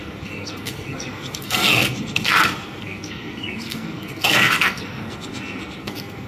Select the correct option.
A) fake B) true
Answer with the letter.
A